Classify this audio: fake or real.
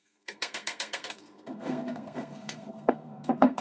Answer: fake